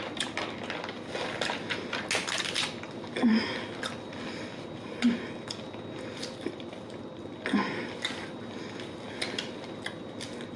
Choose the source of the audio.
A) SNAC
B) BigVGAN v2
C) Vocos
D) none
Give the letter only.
D